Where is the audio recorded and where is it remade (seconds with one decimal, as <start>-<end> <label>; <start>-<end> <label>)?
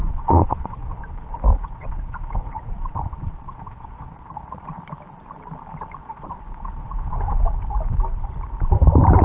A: 0.0-1.0 remade; 1.0-1.5 recorded; 1.5-4.8 remade; 4.8-6.0 recorded; 6.0-7.6 remade; 7.6-9.2 recorded